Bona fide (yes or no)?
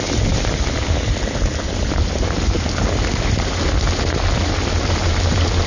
yes